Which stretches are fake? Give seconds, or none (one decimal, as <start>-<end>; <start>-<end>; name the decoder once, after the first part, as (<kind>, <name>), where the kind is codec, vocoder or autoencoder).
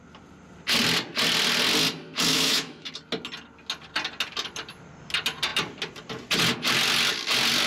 2.3-2.9 (autoencoder, DAC-VAE)